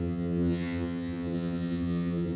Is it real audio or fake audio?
fake